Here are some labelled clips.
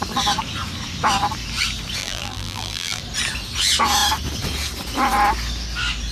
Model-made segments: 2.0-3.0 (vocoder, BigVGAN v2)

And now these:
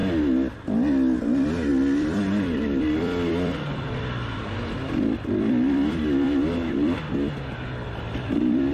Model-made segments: 1.7-8.7 (vocoder, BigVGAN v2)

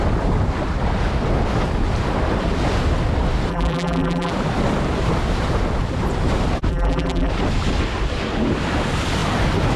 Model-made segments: 3.5-4.3 (vocoder, BigVGAN v2); 6.7-7.3

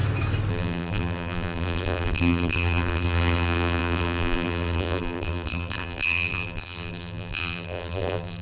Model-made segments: 0.5-8.4 (vocoder, BigVGAN v2)

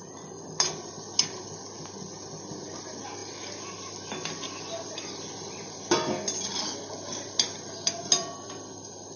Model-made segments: none

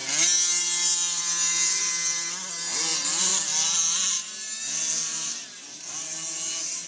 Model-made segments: none

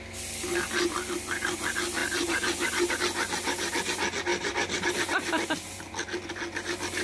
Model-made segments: 2.0-2.9 (vocoder, BigVGAN v2); 4.3-4.9